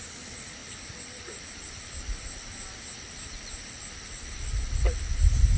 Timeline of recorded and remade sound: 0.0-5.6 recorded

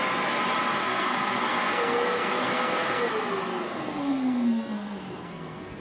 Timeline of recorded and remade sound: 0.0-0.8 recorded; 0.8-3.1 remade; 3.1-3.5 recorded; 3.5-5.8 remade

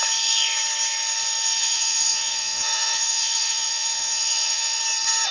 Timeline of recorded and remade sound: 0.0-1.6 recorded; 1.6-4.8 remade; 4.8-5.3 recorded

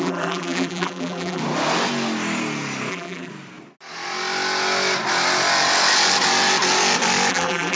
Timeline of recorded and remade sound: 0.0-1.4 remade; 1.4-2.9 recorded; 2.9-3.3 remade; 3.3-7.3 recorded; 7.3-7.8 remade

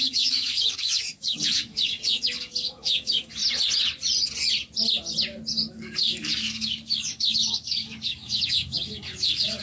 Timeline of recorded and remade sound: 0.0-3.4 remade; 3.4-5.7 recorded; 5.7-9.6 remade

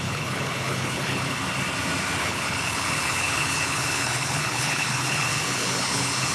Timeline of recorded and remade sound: 0.0-1.4 remade; 1.4-2.2 recorded; 2.2-6.3 remade